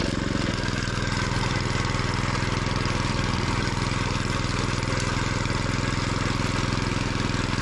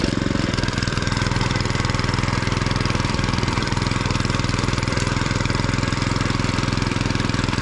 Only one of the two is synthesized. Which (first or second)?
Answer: second